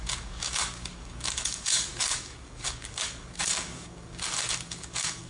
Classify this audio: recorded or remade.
remade